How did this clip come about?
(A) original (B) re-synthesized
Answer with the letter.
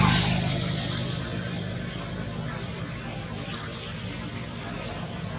A